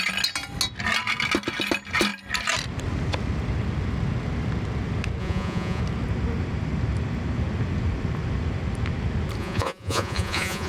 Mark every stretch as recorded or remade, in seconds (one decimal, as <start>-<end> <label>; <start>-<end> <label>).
0.0-5.2 recorded; 5.2-5.8 remade; 5.8-9.4 recorded; 9.4-10.7 remade